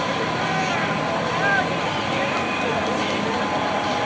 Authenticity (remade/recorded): recorded